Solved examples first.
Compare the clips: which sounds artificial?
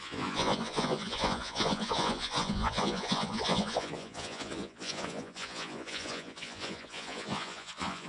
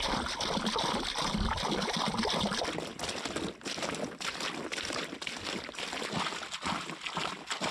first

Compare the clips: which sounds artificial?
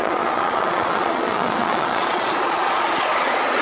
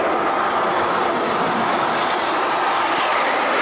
first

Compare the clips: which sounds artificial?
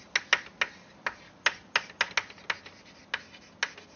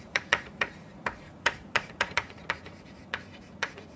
second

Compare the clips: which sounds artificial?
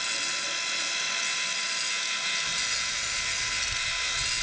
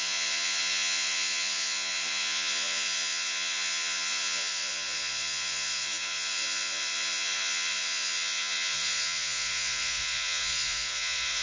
second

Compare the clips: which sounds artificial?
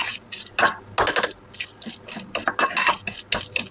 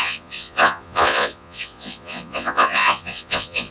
second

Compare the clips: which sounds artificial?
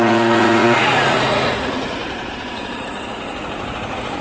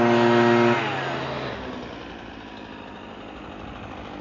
first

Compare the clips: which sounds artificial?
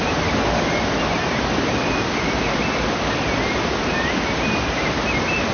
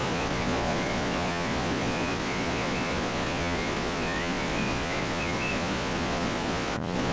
second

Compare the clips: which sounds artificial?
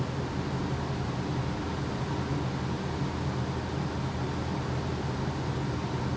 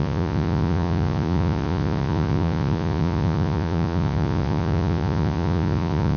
second